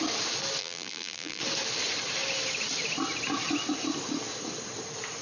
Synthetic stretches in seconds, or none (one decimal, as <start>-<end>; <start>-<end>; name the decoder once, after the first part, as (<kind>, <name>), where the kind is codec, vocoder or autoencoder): 0.6-1.4 (vocoder, BigVGAN v2)